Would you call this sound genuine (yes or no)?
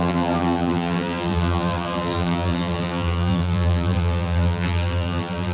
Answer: no